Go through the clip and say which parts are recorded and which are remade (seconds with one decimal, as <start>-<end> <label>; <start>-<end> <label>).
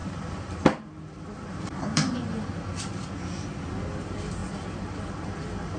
0.0-2.2 remade; 2.2-4.4 recorded; 4.4-5.8 remade